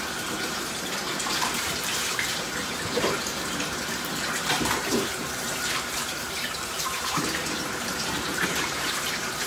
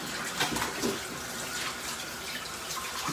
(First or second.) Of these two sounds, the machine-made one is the first